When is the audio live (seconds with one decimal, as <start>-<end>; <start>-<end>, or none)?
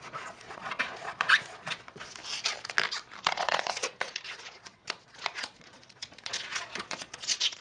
2.2-3.2